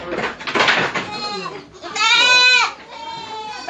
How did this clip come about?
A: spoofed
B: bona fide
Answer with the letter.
B